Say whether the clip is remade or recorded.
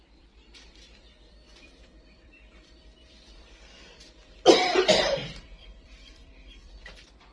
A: remade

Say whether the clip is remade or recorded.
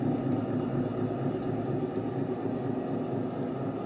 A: recorded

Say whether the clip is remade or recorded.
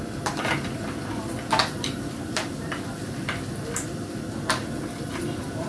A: remade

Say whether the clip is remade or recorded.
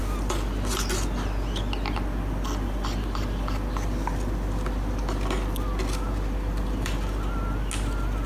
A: recorded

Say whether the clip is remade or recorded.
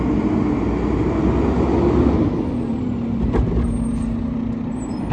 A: recorded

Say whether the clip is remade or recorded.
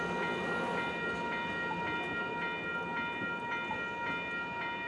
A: recorded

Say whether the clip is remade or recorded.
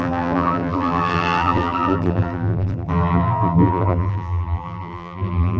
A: remade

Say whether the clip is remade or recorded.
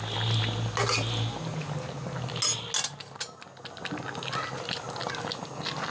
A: recorded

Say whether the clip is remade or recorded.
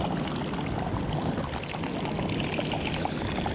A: recorded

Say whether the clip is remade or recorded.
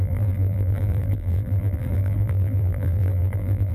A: remade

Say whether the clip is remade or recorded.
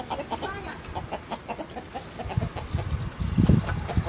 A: recorded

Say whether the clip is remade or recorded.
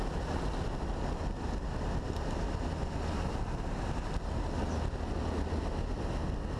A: recorded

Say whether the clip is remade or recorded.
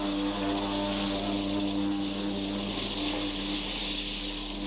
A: recorded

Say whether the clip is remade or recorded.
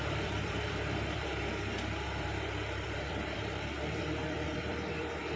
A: remade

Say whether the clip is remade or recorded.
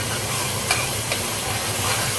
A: remade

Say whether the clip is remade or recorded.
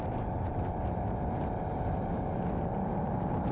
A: remade